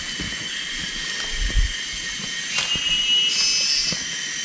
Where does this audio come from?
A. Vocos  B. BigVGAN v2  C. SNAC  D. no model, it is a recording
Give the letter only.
D